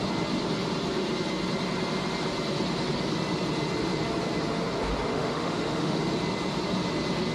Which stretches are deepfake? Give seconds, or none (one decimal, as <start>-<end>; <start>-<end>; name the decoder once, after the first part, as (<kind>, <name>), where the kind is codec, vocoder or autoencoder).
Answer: 5.1-6.0 (autoencoder, DAC-VAE)